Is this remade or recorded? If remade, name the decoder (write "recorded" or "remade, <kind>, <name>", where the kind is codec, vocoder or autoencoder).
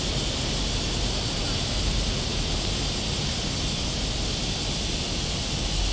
recorded